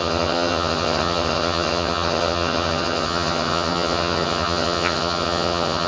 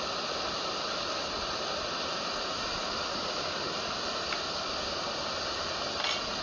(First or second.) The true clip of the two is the second